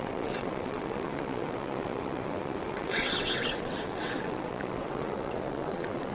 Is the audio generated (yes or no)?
yes